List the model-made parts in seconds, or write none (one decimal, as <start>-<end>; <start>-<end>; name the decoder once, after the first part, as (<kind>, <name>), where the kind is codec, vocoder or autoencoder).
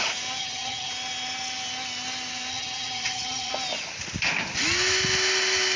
0.4-0.9 (vocoder, HiFi-GAN); 2.5-3.5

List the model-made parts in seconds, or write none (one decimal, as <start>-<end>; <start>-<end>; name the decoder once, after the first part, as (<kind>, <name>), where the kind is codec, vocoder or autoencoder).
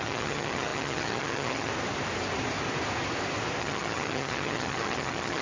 0.0-1.7 (vocoder, HiFi-GAN); 3.6-5.4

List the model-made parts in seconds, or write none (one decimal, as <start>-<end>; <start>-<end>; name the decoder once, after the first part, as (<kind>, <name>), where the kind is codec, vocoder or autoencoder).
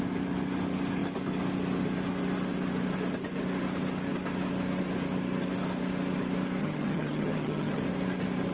6.6-7.8 (vocoder, HiFi-GAN)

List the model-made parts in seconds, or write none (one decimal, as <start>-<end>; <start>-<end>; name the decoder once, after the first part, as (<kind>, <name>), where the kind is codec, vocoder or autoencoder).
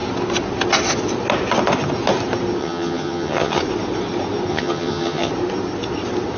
2.6-3.6 (vocoder, HiFi-GAN); 4.5-5.3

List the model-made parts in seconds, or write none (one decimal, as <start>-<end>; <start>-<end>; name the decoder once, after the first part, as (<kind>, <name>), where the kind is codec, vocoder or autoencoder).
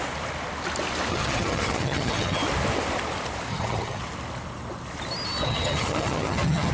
1.1-2.4 (vocoder, HiFi-GAN); 3.5-4.0; 5.4-6.7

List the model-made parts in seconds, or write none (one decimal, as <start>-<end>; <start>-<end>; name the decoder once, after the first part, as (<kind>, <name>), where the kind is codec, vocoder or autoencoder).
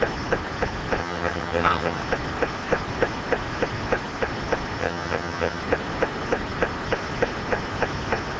1.0-2.0 (vocoder, HiFi-GAN); 4.8-5.6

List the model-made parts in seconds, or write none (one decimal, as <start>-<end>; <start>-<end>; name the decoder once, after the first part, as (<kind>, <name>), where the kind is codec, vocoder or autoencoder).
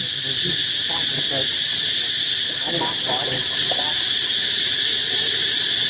none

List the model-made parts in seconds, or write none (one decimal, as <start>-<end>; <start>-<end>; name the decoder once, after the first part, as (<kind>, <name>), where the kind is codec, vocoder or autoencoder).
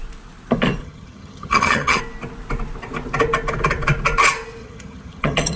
0.8-2.0 (vocoder, HiFi-GAN); 4.6-5.6